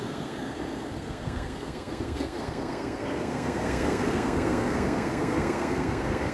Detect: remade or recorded remade